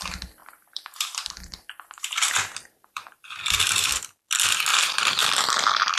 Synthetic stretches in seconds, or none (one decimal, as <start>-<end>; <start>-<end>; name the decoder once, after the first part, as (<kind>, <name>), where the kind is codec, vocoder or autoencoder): 0.4-4.0 (vocoder, BigVGAN v2); 4.7-5.4